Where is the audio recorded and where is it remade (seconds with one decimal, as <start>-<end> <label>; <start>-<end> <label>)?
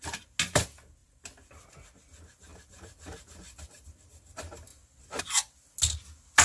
0.0-6.4 recorded